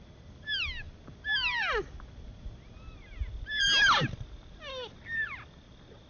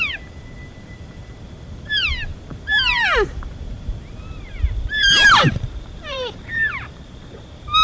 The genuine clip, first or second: first